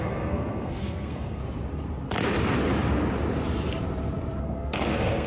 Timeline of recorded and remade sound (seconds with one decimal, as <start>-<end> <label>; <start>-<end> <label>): 0.0-1.4 remade; 1.4-4.4 recorded; 4.4-5.3 remade